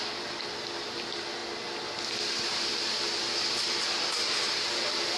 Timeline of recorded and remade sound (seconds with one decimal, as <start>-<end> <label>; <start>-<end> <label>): 0.0-5.2 recorded